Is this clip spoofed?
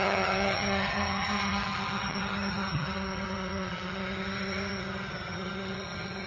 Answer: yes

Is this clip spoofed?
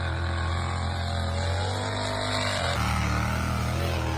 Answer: no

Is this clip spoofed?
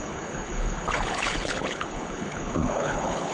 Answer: yes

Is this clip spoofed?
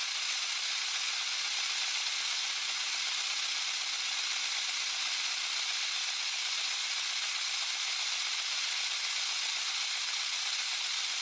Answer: no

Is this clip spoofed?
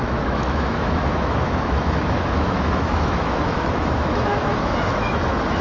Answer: yes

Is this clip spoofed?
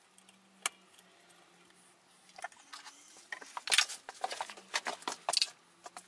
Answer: no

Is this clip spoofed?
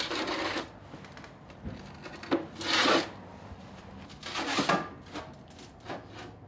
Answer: no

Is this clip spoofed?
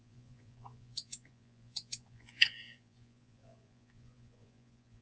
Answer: yes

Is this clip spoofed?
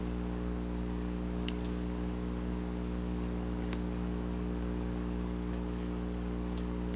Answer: yes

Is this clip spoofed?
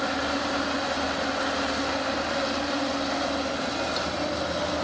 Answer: no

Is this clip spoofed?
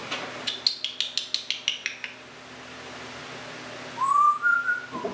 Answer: no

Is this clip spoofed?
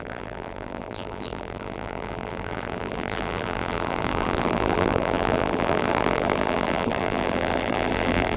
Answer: yes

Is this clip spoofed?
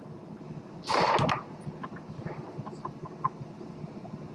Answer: no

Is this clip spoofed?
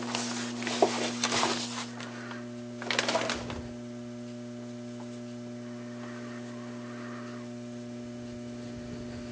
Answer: no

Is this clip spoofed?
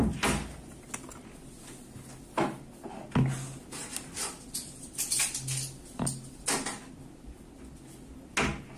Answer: no